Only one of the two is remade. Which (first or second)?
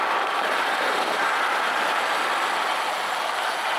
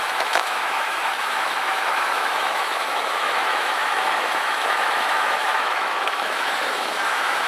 second